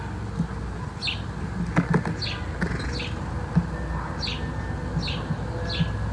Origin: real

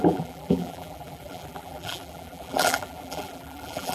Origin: fake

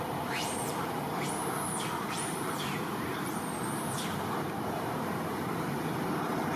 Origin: fake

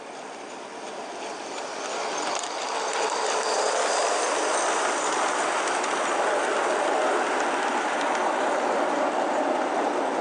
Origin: fake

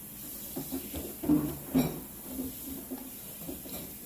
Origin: fake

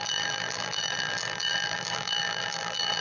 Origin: fake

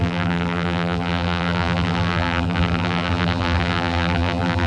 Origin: fake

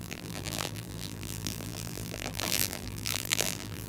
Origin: fake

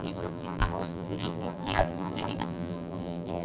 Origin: fake